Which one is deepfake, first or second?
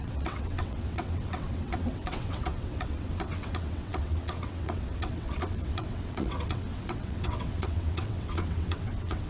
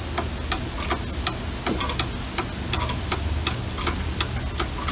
first